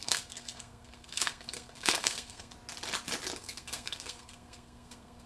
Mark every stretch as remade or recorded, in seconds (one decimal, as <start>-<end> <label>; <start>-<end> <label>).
0.0-2.5 remade; 2.5-3.4 recorded; 3.4-5.3 remade